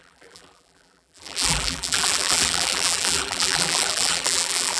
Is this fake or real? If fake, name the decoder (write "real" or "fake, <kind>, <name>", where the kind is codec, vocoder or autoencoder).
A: fake, vocoder, BigVGAN v2